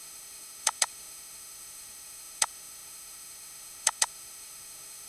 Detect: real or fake fake